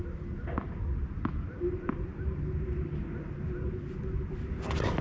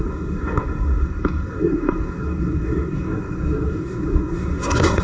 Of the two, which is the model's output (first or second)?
second